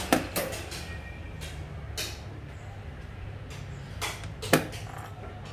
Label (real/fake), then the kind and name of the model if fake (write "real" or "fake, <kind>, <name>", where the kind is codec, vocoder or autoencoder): real